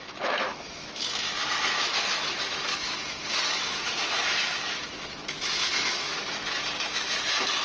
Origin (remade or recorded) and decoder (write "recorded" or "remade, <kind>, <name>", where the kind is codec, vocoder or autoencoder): remade, autoencoder, DAC-VAE